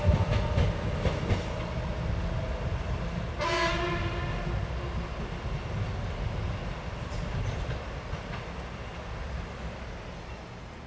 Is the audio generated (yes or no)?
no